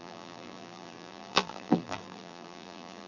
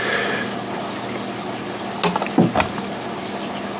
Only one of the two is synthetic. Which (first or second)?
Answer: first